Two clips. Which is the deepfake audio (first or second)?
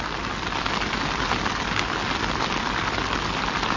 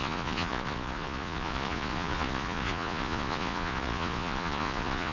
second